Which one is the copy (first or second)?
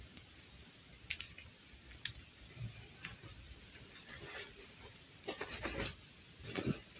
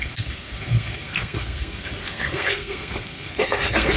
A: second